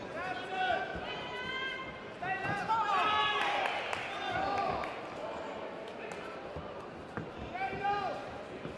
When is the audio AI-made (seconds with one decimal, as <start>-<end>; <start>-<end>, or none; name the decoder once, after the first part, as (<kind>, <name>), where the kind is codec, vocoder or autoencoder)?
none